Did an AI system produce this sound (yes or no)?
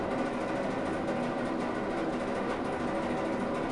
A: no